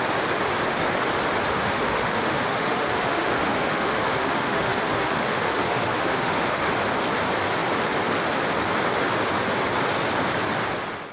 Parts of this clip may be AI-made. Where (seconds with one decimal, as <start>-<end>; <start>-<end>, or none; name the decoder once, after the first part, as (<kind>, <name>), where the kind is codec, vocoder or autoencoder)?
1.5-6.7 (autoencoder, DAC-VAE)